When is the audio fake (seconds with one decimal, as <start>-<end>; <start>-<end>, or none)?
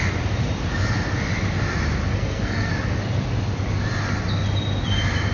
2.1-2.7